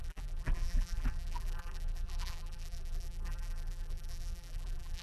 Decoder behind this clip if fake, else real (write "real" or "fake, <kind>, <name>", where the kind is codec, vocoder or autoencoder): fake, vocoder, BigVGAN v2